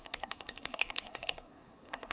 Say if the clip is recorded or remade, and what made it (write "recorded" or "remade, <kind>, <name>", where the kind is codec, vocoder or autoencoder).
remade, codec, SNAC